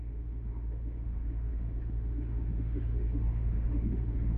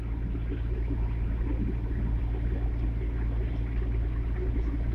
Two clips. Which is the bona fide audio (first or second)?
second